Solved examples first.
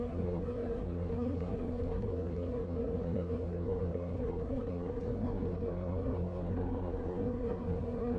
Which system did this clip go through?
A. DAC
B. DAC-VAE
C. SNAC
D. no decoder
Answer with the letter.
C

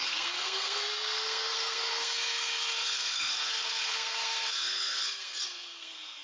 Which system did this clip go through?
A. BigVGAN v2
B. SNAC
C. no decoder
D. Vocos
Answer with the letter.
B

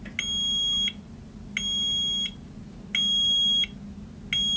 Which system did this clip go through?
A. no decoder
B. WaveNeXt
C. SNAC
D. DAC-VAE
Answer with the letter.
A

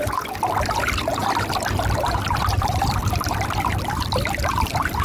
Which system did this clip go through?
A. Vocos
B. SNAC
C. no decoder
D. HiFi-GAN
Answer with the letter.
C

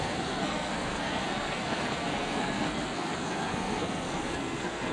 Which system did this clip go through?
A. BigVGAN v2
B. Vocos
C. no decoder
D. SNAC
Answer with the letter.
D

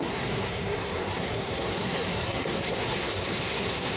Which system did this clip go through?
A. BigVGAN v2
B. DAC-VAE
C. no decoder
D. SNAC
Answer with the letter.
D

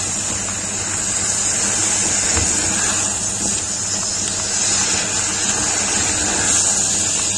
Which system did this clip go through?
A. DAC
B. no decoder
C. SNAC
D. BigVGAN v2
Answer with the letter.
B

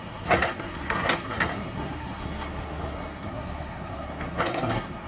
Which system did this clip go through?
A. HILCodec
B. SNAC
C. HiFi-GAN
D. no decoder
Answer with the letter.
B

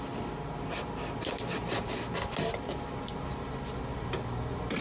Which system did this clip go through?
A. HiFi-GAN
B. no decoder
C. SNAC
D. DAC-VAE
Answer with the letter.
B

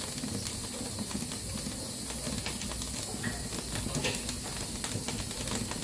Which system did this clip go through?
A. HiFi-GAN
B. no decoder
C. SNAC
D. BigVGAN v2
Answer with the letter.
B